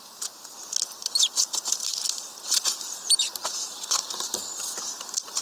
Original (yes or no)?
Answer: no